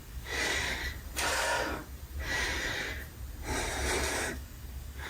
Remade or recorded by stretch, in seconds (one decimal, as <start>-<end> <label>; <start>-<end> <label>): 0.0-0.8 remade; 0.8-1.3 recorded; 1.3-1.8 remade; 1.8-4.2 recorded; 4.2-5.1 remade